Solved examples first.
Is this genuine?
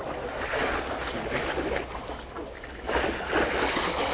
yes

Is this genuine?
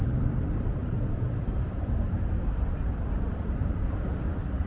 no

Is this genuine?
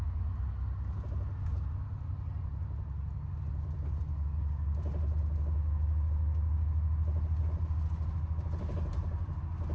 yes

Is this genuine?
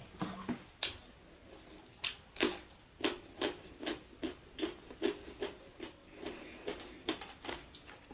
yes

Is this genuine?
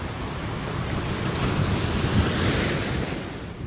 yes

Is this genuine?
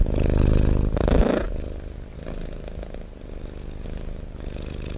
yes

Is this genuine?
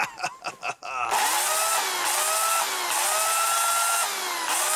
yes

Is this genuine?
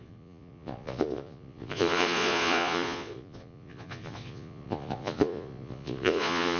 no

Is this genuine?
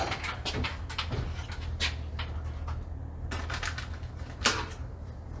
yes